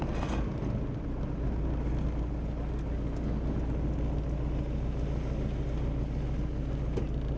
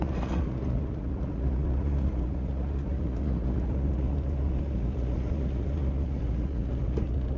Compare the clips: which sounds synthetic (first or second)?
second